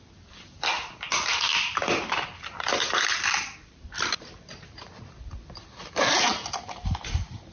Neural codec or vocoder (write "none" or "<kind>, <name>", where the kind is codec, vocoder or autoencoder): vocoder, BigVGAN v2